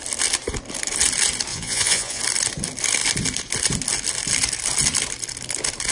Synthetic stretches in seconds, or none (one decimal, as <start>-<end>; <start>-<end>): 1.5-2.2